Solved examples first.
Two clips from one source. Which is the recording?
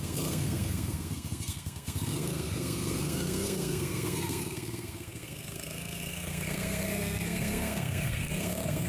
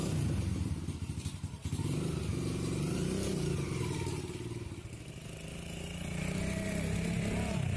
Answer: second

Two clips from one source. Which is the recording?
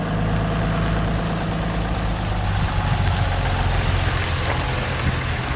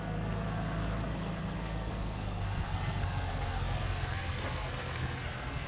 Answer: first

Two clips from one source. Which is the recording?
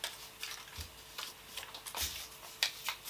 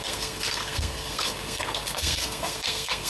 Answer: first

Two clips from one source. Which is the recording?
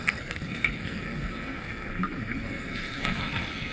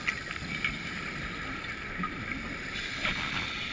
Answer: second